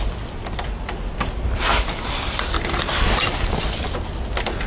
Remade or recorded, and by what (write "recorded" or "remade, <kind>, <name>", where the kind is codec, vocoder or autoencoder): remade, vocoder, BigVGAN v2